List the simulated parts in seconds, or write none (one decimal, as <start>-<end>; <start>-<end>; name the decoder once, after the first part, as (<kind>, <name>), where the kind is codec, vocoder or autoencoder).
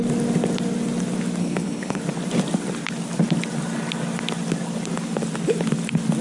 1.4-2.0 (codec, HILCodec)